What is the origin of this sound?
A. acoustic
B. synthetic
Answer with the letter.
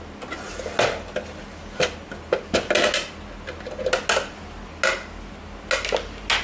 A